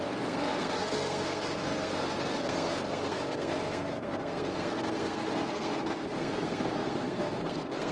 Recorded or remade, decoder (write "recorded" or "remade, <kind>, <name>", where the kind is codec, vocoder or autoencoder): remade, codec, SNAC